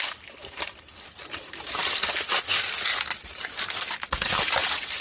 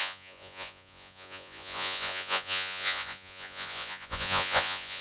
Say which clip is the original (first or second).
first